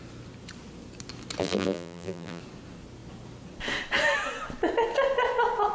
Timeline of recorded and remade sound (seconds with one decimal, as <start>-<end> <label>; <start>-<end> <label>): 0.0-1.4 recorded; 1.4-2.4 remade; 2.4-5.7 recorded